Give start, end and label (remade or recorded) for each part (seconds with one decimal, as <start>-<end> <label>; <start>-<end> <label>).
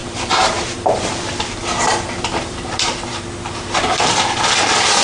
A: 0.0-3.0 remade; 3.0-5.0 recorded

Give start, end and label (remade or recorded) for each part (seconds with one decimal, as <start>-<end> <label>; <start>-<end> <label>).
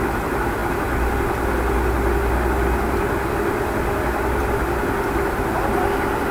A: 0.0-6.3 recorded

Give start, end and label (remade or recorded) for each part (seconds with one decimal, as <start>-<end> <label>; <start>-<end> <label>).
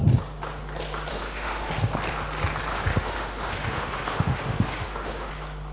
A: 0.0-1.1 recorded; 1.1-1.7 remade; 1.7-2.7 recorded; 2.7-5.3 remade; 5.3-5.7 recorded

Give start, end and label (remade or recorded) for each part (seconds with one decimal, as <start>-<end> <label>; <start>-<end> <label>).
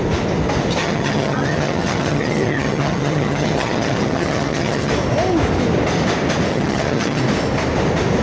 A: 0.0-0.8 recorded; 0.8-4.9 remade; 4.9-6.5 recorded; 6.5-7.2 remade; 7.2-8.2 recorded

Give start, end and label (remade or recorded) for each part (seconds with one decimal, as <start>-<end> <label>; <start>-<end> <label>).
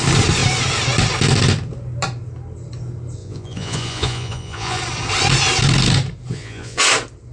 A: 0.0-3.2 recorded; 3.2-4.8 remade; 4.8-6.3 recorded; 6.3-6.8 remade; 6.8-7.3 recorded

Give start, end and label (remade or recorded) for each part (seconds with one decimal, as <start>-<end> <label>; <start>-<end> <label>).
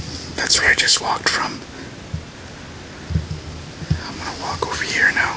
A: 0.0-0.5 recorded; 0.5-1.0 remade; 1.0-5.4 recorded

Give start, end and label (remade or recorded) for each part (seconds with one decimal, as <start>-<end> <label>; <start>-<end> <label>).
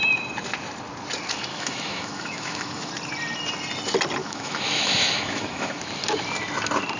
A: 0.0-1.5 recorded; 1.5-2.9 remade; 2.9-4.2 recorded; 4.2-5.8 remade; 5.8-7.0 recorded